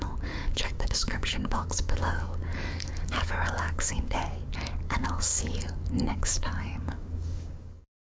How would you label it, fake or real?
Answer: fake